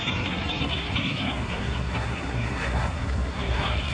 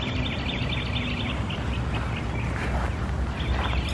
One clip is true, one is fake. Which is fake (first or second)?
first